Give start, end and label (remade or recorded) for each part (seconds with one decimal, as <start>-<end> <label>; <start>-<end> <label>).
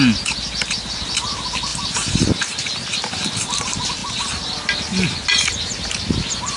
0.0-6.6 recorded